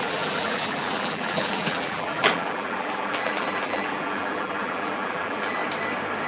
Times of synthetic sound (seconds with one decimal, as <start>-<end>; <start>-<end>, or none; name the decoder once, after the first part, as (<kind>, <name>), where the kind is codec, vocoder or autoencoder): 0.0-5.6 (vocoder, BigVGAN v2)

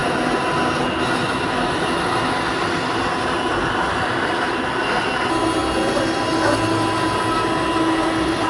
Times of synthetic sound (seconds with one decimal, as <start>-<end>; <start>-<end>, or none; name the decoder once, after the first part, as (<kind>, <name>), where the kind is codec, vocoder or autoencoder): none